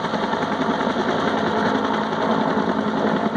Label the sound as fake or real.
real